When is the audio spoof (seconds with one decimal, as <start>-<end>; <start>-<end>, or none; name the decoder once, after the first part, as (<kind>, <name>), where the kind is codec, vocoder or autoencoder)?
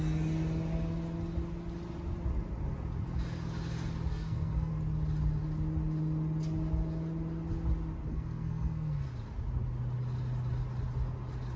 4.1-4.7 (codec, SNAC); 8.1-9.1